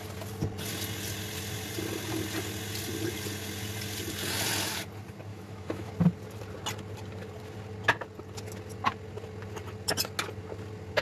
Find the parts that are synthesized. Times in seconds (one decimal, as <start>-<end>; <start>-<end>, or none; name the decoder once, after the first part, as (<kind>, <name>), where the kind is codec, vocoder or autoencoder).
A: 5.3-5.9 (autoencoder, DAC-VAE)